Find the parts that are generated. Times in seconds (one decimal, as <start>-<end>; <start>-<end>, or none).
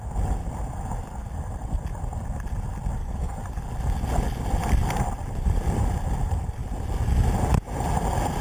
3.0-3.6